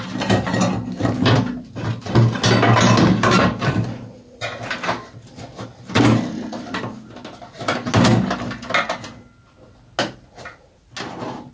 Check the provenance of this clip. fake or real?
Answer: real